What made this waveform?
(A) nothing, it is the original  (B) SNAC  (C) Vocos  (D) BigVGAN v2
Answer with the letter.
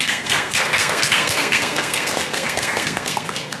B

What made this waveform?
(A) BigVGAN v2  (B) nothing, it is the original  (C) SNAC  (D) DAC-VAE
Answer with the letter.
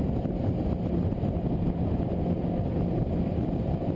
B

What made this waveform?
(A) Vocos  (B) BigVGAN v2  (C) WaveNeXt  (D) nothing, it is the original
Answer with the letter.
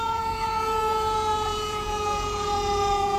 A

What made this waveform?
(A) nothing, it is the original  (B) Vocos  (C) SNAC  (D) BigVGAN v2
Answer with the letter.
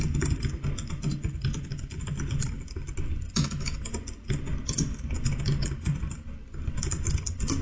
A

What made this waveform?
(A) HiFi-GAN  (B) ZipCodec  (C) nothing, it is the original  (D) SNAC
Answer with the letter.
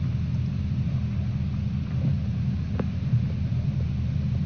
C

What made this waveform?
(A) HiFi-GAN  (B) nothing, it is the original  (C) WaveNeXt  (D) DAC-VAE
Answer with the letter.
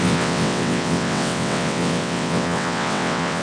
C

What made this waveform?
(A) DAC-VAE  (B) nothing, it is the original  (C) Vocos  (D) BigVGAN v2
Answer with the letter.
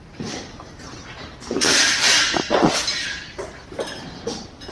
B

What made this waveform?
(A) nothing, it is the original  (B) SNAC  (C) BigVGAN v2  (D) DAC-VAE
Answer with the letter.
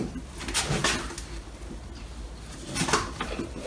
A